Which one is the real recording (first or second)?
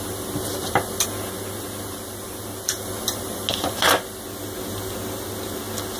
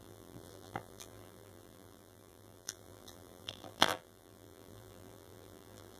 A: first